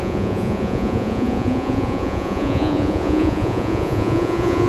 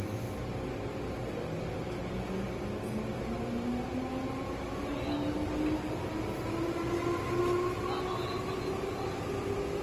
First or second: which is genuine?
second